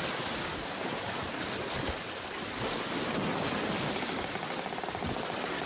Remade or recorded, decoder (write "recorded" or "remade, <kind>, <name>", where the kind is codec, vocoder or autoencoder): recorded